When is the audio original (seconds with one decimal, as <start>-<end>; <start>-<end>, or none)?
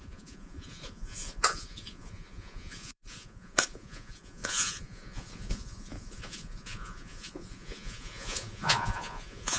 none